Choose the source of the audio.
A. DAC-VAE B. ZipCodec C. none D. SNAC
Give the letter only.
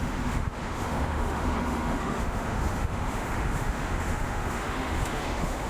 A